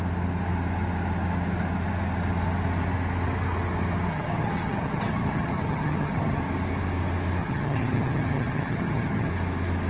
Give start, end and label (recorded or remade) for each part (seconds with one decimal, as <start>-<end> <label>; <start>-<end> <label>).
0.0-4.1 recorded; 4.1-6.4 remade; 6.4-7.4 recorded; 7.4-9.3 remade; 9.3-9.9 recorded